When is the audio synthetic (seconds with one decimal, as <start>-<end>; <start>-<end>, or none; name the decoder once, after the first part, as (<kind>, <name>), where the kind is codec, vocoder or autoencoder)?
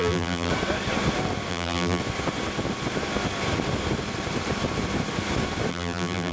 0.0-0.5 (vocoder, BigVGAN v2); 1.5-2.0; 5.7-6.3